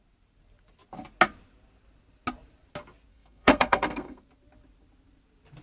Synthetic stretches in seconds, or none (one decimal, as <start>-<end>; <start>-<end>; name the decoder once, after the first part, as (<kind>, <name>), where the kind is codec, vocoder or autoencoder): 3.1-4.2 (codec, SNAC)